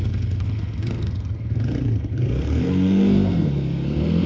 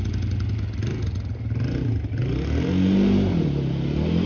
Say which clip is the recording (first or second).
second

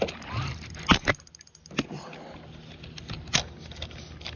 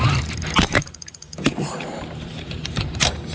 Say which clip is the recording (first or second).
first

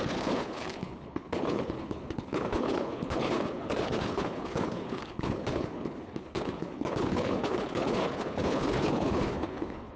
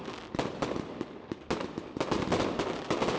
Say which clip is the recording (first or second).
second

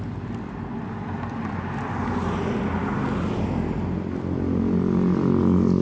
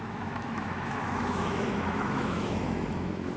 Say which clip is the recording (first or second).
first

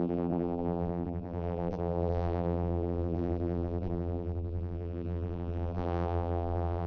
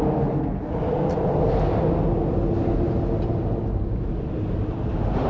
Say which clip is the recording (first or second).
second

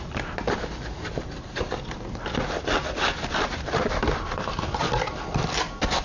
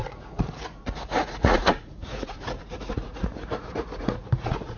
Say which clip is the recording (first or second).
first